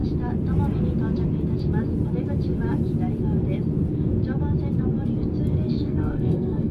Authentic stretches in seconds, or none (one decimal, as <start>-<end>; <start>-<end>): 0.0-5.7